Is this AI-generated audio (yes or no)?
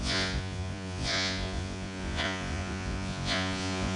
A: yes